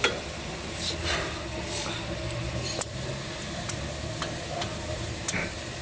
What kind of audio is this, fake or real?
real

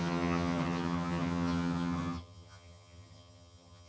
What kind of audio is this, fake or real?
fake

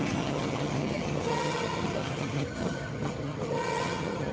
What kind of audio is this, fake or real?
fake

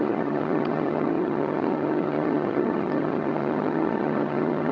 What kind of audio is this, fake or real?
fake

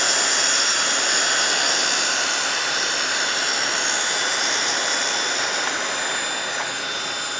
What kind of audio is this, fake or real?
real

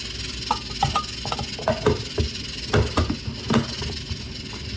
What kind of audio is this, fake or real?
real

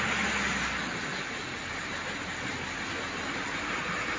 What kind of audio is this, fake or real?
real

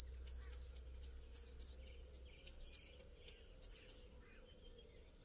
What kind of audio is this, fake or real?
real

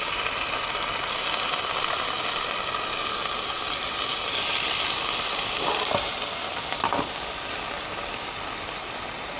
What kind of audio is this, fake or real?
real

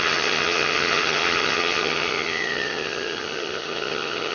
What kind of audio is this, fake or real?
fake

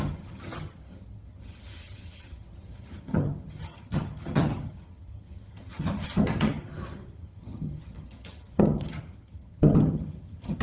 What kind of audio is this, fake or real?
fake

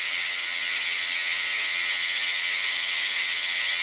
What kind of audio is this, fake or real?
fake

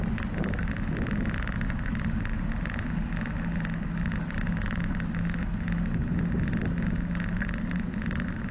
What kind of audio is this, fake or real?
real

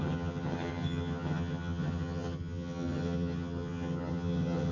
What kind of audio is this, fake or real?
fake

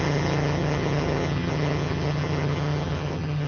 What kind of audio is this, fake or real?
fake